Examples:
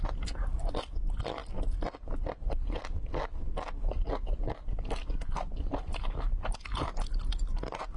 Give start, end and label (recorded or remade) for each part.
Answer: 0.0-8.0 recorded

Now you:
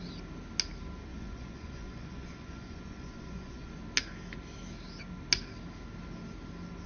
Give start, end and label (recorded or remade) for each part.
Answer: 0.0-1.1 recorded; 1.1-3.8 remade; 3.8-6.9 recorded

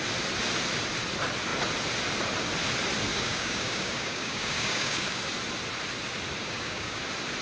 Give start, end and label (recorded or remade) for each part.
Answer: 0.0-3.1 recorded; 3.1-5.2 remade; 5.2-6.4 recorded; 6.4-7.0 remade; 7.0-7.4 recorded

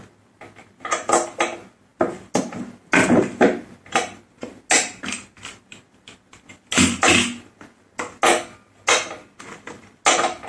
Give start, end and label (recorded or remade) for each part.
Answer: 0.0-10.5 recorded

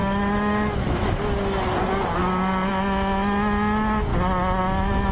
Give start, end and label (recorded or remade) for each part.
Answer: 0.0-1.2 remade; 1.2-5.1 recorded

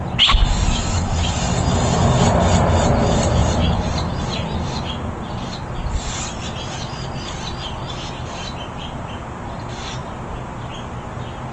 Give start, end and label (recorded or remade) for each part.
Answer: 0.0-11.5 recorded